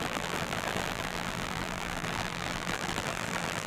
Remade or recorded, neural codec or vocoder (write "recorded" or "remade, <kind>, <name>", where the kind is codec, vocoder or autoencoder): remade, vocoder, BigVGAN v2